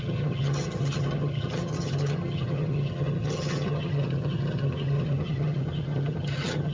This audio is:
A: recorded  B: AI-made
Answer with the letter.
B